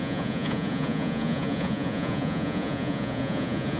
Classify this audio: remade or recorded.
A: remade